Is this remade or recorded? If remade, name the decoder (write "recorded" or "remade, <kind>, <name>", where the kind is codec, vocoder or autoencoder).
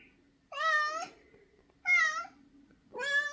recorded